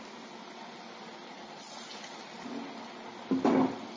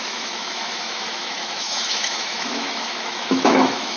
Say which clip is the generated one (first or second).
second